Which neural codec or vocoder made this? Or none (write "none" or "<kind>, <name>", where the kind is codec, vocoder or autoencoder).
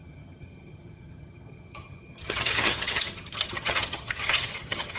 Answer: vocoder, HiFi-GAN